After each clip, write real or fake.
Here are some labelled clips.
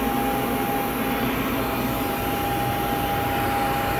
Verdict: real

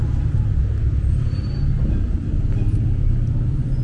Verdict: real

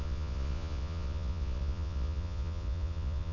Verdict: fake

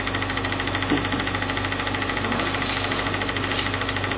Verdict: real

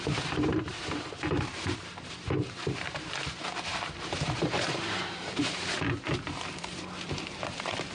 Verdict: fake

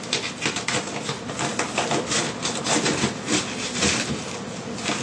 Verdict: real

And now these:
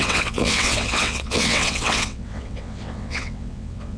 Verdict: fake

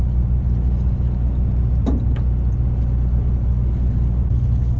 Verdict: real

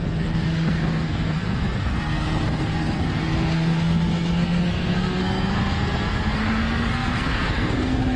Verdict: fake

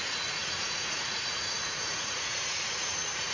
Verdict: fake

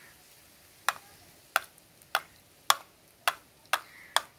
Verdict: real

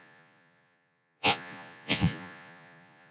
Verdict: fake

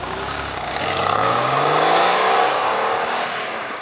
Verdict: fake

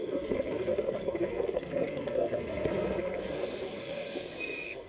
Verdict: fake